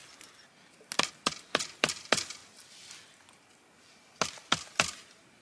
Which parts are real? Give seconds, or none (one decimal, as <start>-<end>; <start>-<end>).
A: 0.0-5.4